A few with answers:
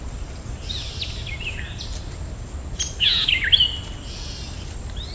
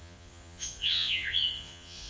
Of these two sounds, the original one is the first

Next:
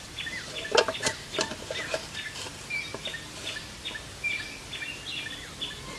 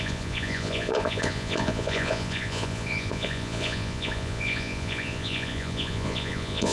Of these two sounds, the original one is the first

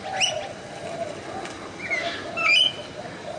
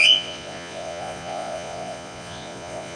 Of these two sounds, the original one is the first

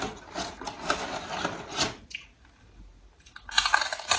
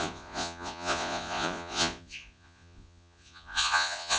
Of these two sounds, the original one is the first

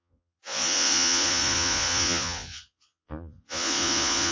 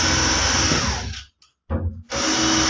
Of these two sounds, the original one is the second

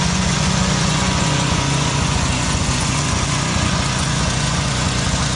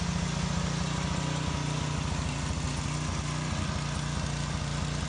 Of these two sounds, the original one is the second